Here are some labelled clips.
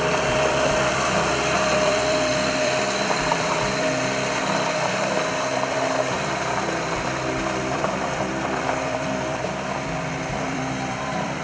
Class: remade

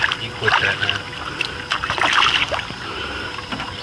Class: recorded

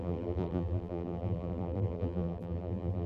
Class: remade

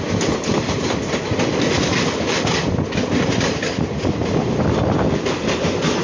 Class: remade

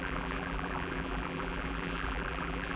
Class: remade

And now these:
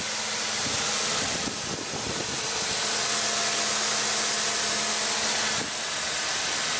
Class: recorded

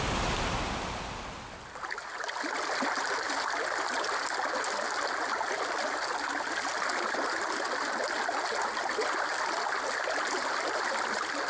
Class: recorded